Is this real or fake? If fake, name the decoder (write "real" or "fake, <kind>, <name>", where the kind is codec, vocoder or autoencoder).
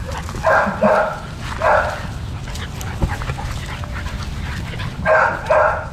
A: real